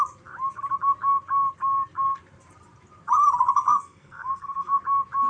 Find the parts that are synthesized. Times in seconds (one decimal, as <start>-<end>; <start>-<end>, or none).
3.7-4.8